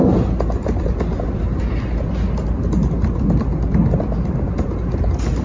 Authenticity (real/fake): real